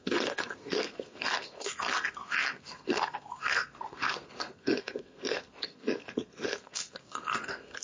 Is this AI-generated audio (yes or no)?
yes